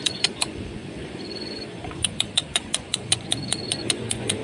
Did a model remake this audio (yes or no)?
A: yes